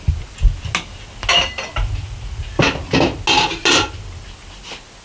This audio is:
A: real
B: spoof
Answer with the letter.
A